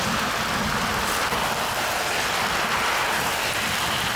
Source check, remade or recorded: recorded